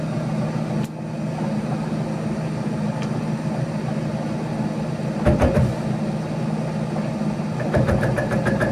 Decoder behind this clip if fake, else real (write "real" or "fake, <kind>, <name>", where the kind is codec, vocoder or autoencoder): real